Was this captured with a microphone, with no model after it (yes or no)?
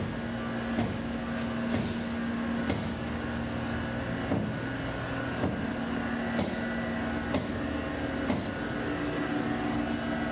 yes